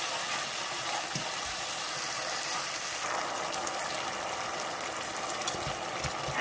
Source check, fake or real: real